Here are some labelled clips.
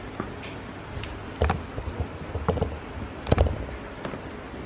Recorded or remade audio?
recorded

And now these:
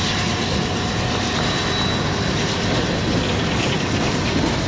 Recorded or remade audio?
recorded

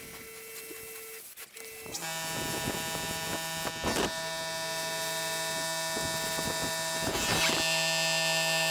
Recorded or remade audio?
recorded